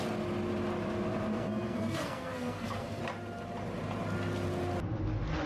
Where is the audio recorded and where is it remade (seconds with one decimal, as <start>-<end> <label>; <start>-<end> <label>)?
0.0-1.3 recorded; 1.3-3.0 remade; 3.0-5.5 recorded

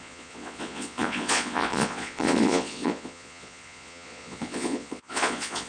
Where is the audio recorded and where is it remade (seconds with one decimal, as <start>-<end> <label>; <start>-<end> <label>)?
0.0-5.7 remade

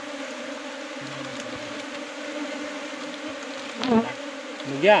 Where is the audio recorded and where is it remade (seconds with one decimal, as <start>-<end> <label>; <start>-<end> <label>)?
0.0-1.3 recorded; 1.3-4.1 remade; 4.1-5.0 recorded

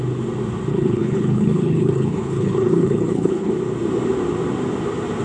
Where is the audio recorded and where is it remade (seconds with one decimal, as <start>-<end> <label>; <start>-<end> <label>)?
0.0-0.7 recorded; 0.7-3.5 remade; 3.5-5.2 recorded

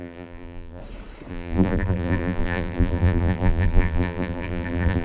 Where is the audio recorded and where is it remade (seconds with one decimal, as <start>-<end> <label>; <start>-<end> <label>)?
0.0-0.8 remade; 0.8-1.3 recorded; 1.3-5.0 remade

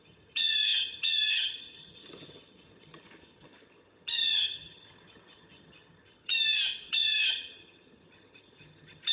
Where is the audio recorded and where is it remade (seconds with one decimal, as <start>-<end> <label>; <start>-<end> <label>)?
0.0-6.3 remade; 6.3-6.9 recorded; 6.9-9.1 remade